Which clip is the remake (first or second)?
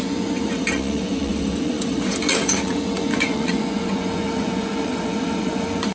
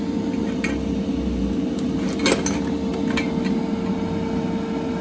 first